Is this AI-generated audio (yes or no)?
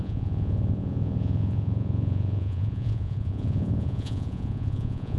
yes